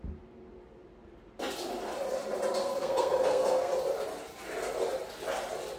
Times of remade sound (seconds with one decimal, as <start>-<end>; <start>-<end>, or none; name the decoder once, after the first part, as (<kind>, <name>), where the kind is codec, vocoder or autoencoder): 2.6-3.7 (codec, SNAC)